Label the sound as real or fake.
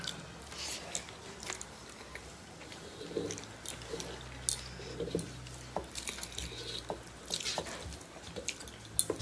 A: real